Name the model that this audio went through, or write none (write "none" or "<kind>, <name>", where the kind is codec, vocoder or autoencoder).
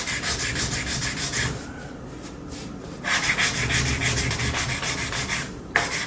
vocoder, BigVGAN v2